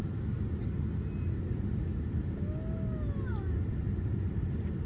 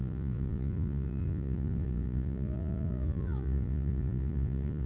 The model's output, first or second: second